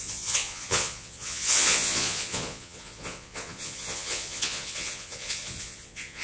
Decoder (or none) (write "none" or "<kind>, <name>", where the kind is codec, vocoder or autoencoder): vocoder, Vocos